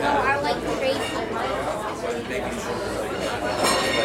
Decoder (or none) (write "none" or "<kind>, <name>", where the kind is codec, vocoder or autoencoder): none